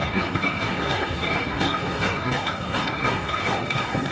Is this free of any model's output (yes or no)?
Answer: no